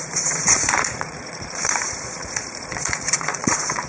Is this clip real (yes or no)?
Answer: no